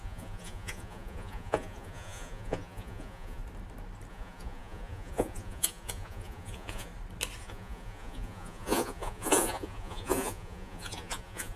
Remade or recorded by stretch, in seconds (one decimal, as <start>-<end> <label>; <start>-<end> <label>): 0.0-3.4 remade; 3.4-4.1 recorded; 4.1-6.9 remade; 6.9-7.4 recorded; 7.4-11.6 remade